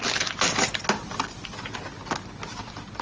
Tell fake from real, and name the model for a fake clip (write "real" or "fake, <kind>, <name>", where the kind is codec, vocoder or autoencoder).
real